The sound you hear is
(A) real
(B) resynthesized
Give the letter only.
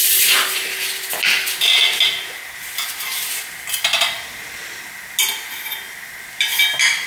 A